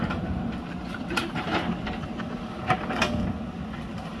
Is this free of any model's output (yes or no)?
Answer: yes